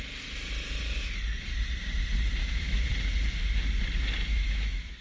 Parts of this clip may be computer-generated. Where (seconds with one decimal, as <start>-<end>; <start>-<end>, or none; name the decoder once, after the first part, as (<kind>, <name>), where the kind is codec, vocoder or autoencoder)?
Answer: 2.4-2.9 (autoencoder, DAC-VAE); 4.3-5.0